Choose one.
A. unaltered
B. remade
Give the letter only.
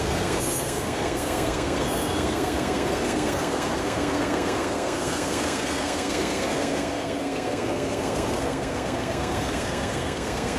B